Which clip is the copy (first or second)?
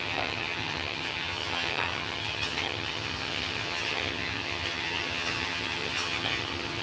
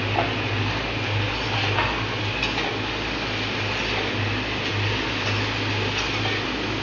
first